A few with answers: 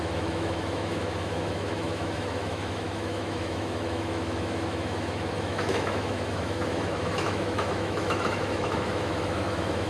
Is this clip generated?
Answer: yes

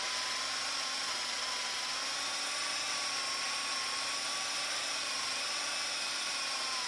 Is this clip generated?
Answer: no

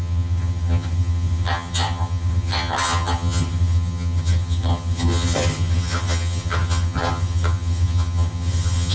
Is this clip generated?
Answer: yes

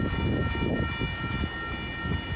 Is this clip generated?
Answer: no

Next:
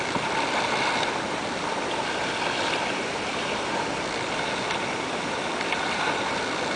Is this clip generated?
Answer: no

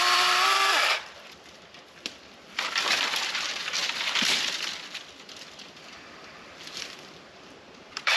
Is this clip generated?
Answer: yes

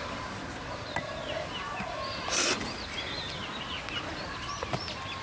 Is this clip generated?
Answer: no